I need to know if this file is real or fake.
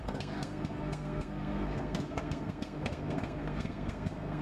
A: fake